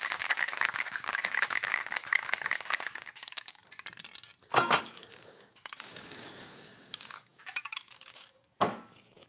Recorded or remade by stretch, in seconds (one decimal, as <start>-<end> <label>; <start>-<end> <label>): 0.0-3.6 remade; 3.6-4.8 recorded; 4.8-9.3 remade